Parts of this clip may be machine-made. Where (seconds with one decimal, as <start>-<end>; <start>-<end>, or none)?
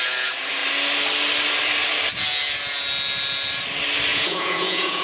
4.1-5.0